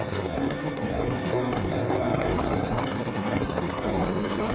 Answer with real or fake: fake